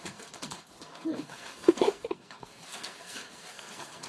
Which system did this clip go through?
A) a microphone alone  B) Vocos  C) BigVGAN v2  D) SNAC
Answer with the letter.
D